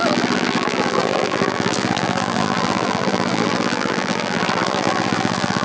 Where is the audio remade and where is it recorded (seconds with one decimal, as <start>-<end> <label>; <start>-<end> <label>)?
0.0-5.6 remade